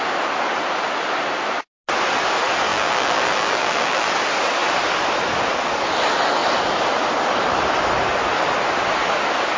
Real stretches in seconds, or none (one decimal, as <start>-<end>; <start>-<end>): 0.0-2.7; 4.1-9.6